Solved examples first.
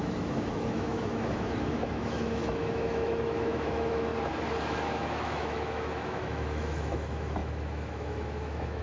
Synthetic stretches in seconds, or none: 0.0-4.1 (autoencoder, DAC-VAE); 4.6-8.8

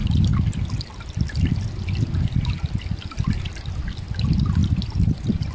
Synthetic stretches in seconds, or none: 4.6-5.5 (vocoder, BigVGAN v2)

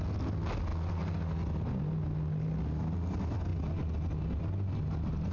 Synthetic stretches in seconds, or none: none

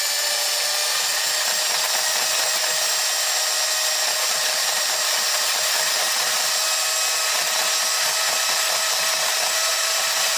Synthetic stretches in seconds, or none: 9.7-10.4 (vocoder, BigVGAN v2)

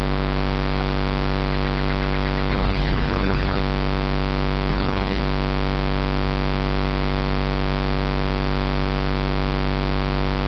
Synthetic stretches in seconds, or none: 2.5-3.6 (codec, HILCodec); 4.7-5.2